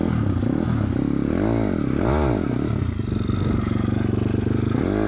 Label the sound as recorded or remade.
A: recorded